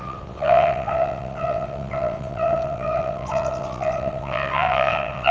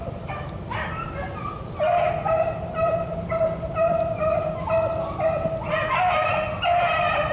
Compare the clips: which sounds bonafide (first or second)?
second